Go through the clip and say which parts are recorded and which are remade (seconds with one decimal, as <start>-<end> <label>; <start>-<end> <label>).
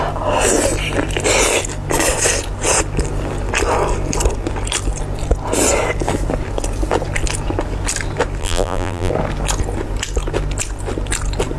0.0-8.4 recorded; 8.4-9.1 remade; 9.1-11.6 recorded